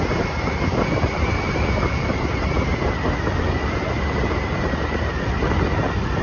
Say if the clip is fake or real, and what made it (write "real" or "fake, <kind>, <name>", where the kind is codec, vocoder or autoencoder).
real